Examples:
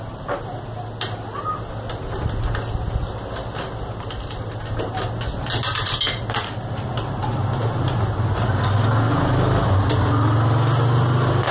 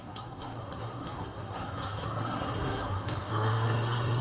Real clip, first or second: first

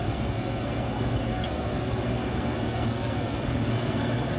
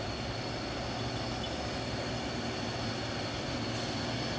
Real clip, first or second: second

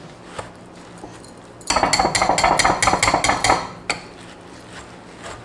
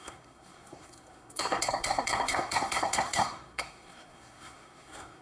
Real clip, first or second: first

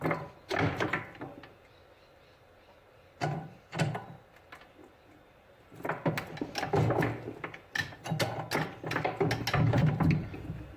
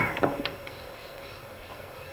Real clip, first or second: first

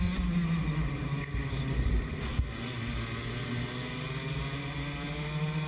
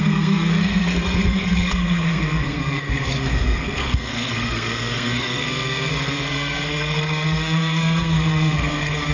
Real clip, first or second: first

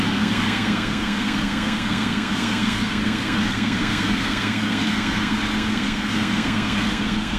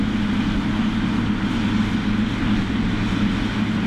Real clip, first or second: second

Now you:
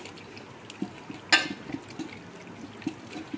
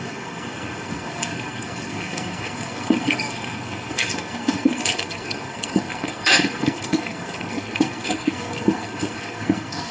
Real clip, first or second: first